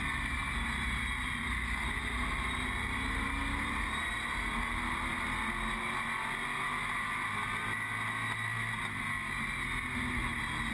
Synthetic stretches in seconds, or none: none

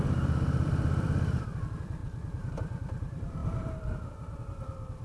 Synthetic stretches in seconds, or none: 0.0-5.0 (vocoder, BigVGAN v2)

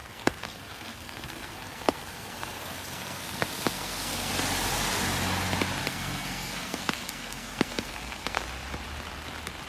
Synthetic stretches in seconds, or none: 0.0-4.3 (codec, SNAC); 5.8-8.4

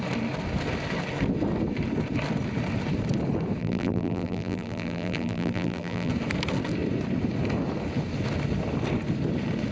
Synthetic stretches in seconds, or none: 3.6-6.1 (vocoder, BigVGAN v2)